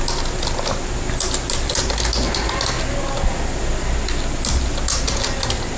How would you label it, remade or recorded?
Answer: recorded